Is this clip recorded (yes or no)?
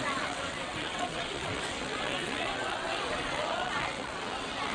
no